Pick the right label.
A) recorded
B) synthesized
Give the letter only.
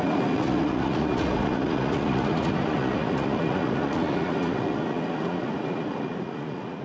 B